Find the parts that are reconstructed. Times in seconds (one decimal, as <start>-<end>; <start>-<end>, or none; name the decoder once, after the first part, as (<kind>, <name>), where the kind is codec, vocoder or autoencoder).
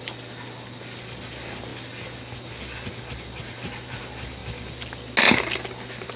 none